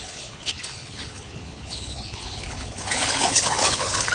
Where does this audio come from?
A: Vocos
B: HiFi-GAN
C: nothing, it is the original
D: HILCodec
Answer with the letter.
D